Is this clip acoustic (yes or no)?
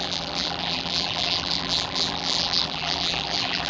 no